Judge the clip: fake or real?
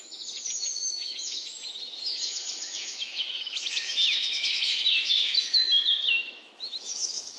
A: fake